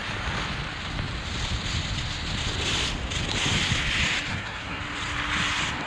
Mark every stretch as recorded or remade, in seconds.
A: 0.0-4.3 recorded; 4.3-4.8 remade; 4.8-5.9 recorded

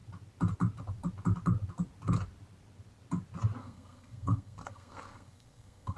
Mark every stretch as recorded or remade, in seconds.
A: 0.0-3.6 recorded; 3.6-6.0 remade

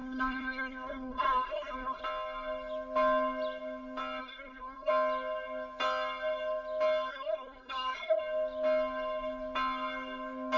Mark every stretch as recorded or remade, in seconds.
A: 0.0-2.0 remade; 2.0-4.2 recorded; 4.2-4.9 remade; 4.9-7.1 recorded; 7.1-8.2 remade; 8.2-10.6 recorded

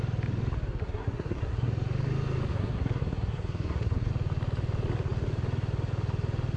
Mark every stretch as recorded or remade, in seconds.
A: 0.0-0.8 recorded; 0.8-1.7 remade; 1.7-2.5 recorded; 2.5-4.1 remade; 4.1-6.6 recorded

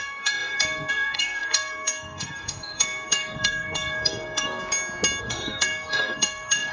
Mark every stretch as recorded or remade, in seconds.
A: 0.0-4.6 remade; 4.6-5.2 recorded; 5.2-6.7 remade

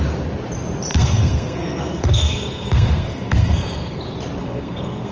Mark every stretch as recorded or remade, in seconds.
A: 0.0-0.9 recorded; 0.9-4.0 remade; 4.0-4.4 recorded; 4.4-5.1 remade

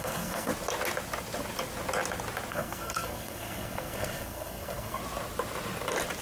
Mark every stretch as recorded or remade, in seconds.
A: 0.0-0.5 remade; 0.5-2.5 recorded; 2.5-5.0 remade; 5.0-6.2 recorded